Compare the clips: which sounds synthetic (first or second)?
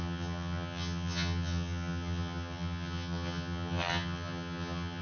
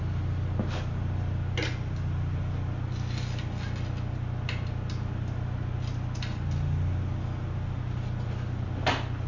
first